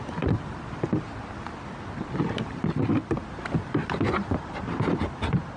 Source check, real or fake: real